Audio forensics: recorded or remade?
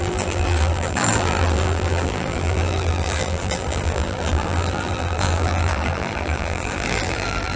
remade